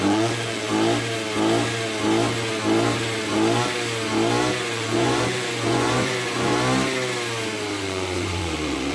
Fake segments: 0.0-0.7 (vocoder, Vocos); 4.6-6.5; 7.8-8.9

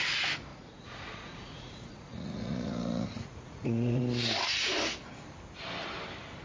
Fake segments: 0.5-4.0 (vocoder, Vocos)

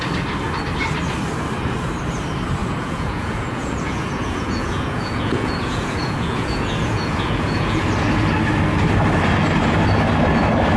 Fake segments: 2.6-7.8 (vocoder, Vocos)

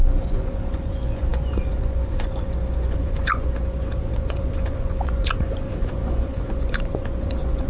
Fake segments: 0.0-7.7 (vocoder, Vocos)

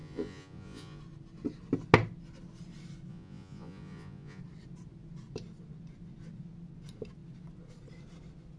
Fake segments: 0.0-1.0 (vocoder, Vocos); 3.1-4.4